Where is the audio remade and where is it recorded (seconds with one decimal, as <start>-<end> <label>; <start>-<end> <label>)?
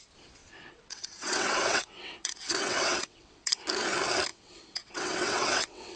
0.0-0.4 recorded; 0.4-3.5 remade; 3.5-4.3 recorded; 4.3-6.0 remade